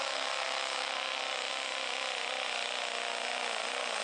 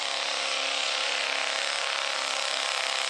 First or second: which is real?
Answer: first